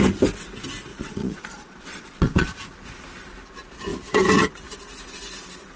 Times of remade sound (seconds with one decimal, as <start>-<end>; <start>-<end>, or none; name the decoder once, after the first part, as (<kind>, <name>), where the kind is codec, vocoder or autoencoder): 0.9-2.5 (vocoder, Vocos)